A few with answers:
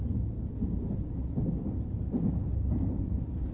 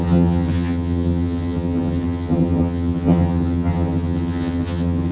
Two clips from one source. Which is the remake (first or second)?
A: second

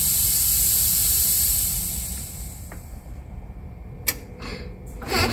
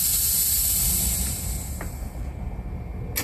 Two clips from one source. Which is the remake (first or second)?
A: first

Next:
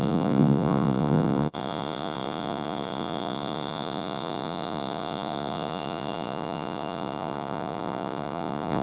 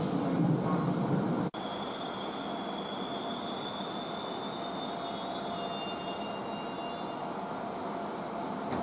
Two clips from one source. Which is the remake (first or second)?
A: first